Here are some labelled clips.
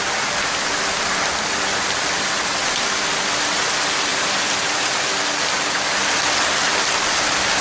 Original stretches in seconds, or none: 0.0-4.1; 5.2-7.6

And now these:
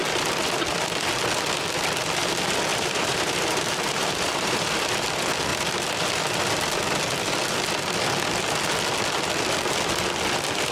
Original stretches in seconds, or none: 0.0-2.7; 4.7-10.7

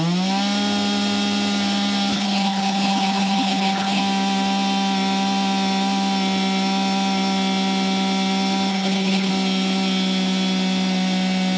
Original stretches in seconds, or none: 0.0-2.1; 4.0-8.7; 9.3-11.6